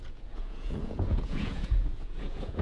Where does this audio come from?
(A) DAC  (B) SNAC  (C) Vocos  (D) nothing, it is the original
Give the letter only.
C